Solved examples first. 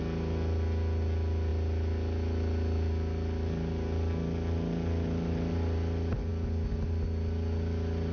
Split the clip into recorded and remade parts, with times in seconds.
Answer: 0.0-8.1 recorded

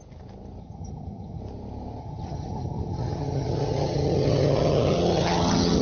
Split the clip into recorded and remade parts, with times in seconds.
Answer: 0.0-0.6 recorded; 0.6-1.4 remade; 1.4-2.0 recorded; 2.0-5.8 remade

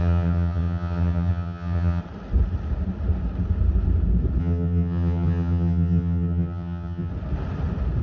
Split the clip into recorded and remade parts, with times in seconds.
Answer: 0.0-2.0 remade; 2.0-4.4 recorded; 4.4-7.1 remade; 7.1-8.0 recorded

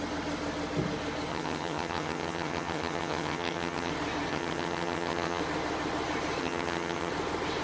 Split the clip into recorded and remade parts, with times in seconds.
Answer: 0.0-1.3 recorded; 1.3-3.9 remade; 3.9-4.3 recorded; 4.3-5.4 remade; 5.4-6.4 recorded; 6.4-7.1 remade; 7.1-7.6 recorded

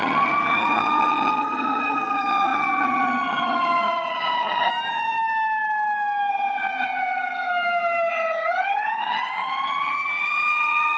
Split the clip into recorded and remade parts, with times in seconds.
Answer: 0.0-4.7 remade; 4.7-6.3 recorded; 6.3-7.5 remade; 7.5-8.1 recorded; 8.1-11.0 remade

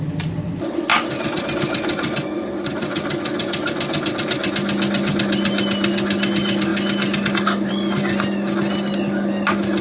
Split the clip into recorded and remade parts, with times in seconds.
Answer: 0.0-9.8 recorded

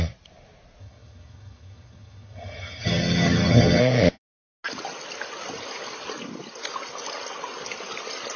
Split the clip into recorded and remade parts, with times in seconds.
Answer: 0.0-0.8 recorded; 0.8-3.8 remade; 3.8-8.4 recorded

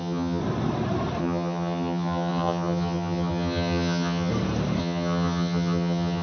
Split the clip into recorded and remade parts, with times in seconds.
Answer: 0.0-0.4 remade; 0.4-1.2 recorded; 1.2-4.3 remade; 4.3-4.8 recorded; 4.8-6.2 remade